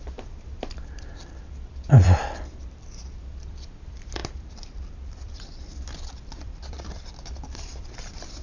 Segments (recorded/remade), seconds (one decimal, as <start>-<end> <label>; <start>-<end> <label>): 0.0-8.4 remade